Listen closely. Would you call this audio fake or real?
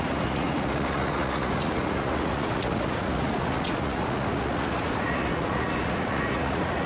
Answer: fake